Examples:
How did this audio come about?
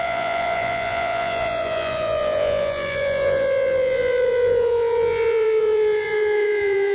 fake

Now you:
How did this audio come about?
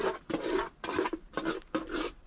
real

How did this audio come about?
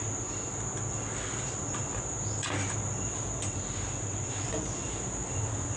real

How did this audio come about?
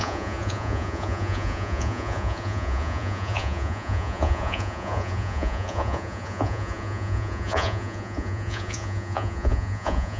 fake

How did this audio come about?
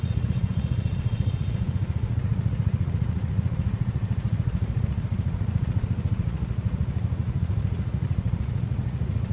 fake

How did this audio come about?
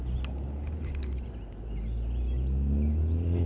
real